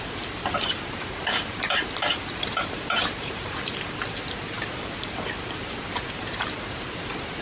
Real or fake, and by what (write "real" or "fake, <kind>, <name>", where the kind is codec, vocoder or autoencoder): fake, vocoder, BigVGAN v2